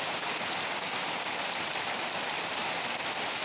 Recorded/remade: recorded